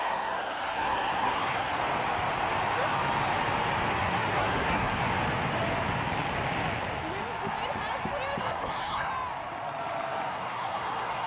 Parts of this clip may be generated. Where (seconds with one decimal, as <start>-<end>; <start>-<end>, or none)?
0.0-1.8; 3.9-5.0; 8.4-9.1; 10.3-11.3